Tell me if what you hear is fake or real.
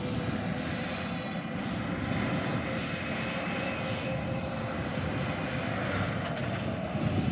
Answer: real